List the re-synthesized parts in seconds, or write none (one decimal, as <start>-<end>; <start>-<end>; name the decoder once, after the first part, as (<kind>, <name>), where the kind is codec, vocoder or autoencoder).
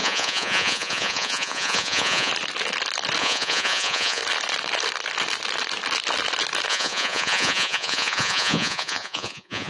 0.0-2.3 (vocoder, Vocos); 3.2-4.2; 6.7-9.7